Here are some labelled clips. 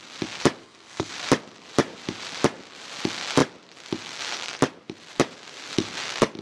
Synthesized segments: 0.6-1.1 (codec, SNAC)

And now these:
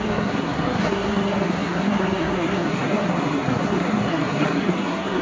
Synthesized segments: 0.0-5.2 (codec, SNAC)

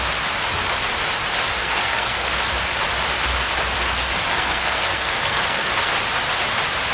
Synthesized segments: 1.6-2.3 (codec, SNAC); 4.3-5.9

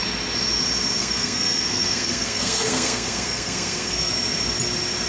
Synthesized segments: 1.0-4.1 (codec, SNAC)

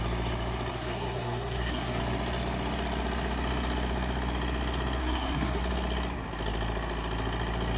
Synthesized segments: 0.7-2.0 (codec, SNAC); 5.0-5.6

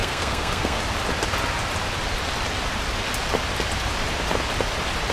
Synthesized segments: 0.0-0.8 (codec, SNAC)

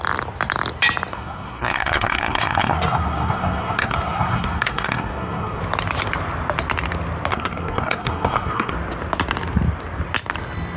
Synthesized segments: 1.1-5.6 (codec, SNAC); 7.3-8.7